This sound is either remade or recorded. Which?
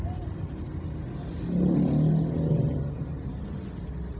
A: recorded